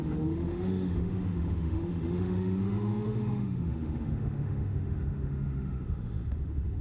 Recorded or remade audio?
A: remade